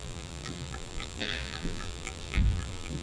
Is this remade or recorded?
remade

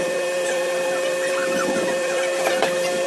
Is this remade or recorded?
remade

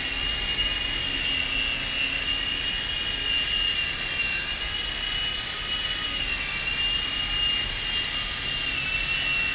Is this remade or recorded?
recorded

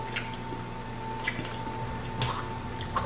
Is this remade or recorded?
recorded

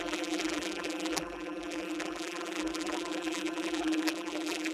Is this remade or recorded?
remade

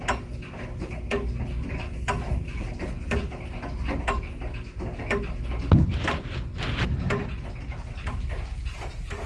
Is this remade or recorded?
recorded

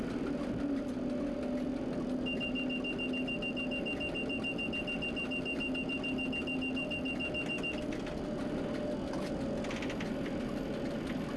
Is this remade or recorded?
recorded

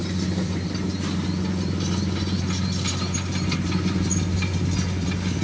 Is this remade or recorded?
recorded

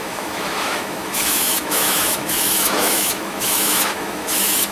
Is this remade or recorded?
remade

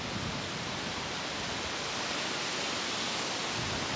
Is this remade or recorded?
recorded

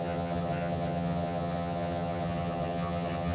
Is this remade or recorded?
remade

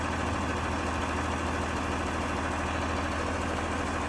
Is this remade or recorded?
recorded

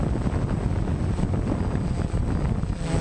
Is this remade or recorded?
recorded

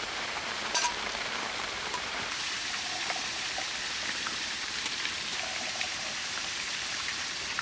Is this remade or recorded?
remade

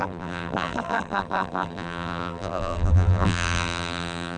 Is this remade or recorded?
remade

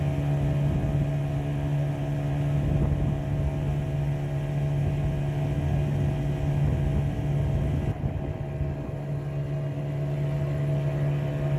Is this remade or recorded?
recorded